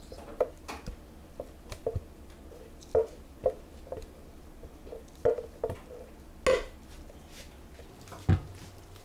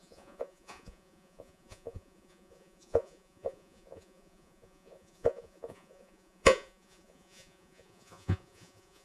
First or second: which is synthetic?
second